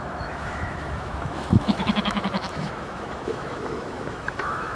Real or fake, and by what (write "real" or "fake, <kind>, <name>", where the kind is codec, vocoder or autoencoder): fake, autoencoder, DAC-VAE